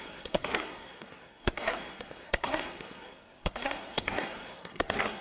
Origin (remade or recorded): remade